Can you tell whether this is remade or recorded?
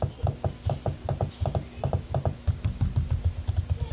recorded